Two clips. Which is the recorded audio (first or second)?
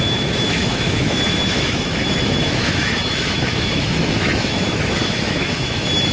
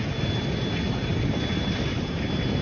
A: second